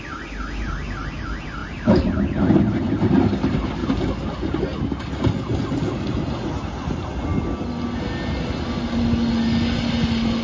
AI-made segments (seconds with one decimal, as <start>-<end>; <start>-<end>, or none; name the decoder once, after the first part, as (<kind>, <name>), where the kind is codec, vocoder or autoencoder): 1.6-2.2 (vocoder, BigVGAN v2)